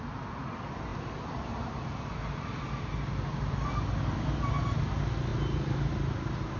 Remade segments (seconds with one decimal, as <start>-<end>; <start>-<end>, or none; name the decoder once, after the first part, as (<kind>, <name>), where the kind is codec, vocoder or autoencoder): none